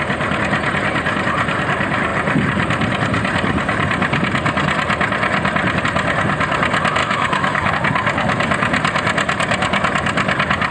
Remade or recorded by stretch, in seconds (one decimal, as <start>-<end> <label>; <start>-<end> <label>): 0.0-7.0 recorded; 7.0-7.7 remade; 7.7-10.7 recorded